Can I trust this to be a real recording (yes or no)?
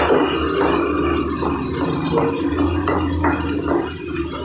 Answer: yes